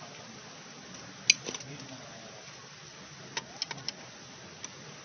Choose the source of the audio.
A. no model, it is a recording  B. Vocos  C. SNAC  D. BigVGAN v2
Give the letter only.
A